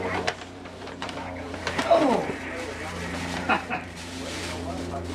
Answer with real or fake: fake